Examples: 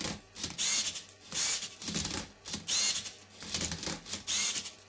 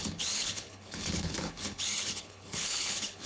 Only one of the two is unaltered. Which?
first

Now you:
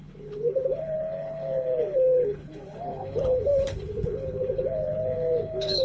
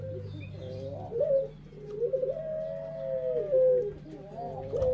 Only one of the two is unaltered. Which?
second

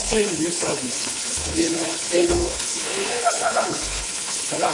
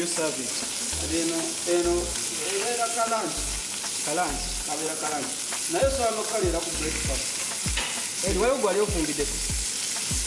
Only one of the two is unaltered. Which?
second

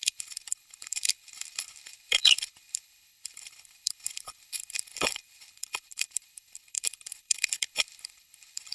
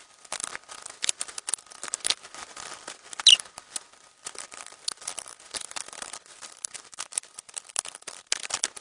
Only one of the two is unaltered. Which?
second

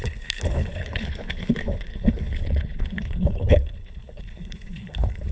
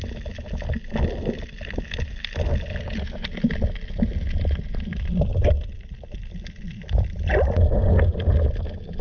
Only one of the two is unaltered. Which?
second